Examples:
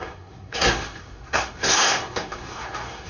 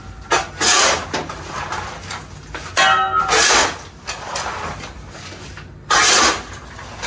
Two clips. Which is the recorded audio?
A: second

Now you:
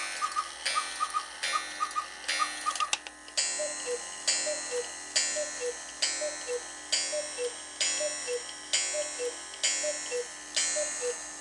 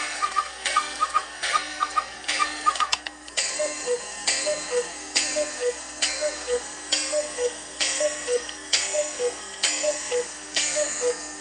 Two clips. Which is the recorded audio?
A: first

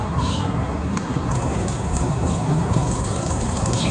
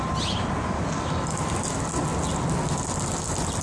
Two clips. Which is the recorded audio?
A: second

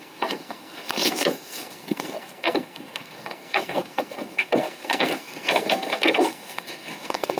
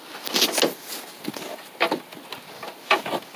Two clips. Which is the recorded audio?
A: second